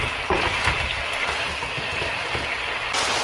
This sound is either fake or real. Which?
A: real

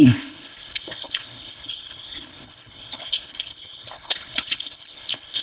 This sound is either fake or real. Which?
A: fake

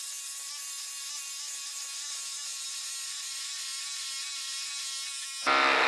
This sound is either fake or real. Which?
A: real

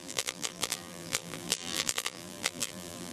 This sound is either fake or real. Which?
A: fake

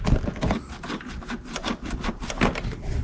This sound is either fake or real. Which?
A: real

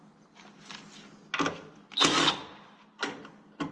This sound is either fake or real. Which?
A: real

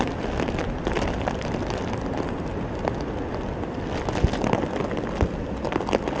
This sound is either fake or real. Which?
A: real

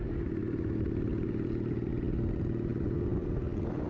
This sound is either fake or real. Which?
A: real